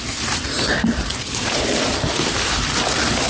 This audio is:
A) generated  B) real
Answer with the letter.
B